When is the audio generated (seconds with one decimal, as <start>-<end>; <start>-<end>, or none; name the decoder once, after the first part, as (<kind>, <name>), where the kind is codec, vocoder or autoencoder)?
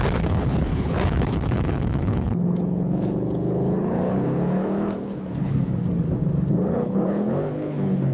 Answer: 0.0-5.8 (codec, HILCodec); 6.5-8.1